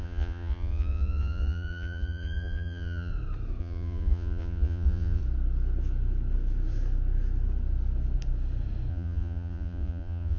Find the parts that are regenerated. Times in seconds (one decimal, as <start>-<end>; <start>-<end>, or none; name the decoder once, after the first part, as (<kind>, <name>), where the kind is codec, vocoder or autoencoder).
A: 0.0-3.1 (vocoder, Vocos); 3.6-5.2; 8.9-10.4